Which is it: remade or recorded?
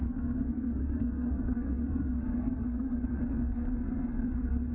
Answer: remade